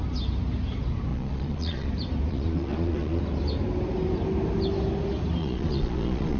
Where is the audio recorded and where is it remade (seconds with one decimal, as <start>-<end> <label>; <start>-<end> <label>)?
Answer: 0.0-1.1 recorded; 1.1-1.9 remade; 1.9-2.3 recorded; 2.3-3.2 remade; 3.2-5.4 recorded; 5.4-6.4 remade